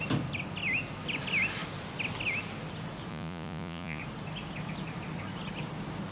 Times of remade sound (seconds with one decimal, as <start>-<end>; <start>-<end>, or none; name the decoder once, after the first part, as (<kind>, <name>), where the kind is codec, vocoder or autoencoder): 3.1-4.0 (vocoder, Vocos)